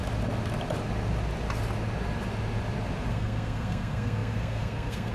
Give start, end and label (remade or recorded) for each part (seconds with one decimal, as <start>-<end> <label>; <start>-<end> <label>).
0.0-3.1 recorded; 3.1-5.1 remade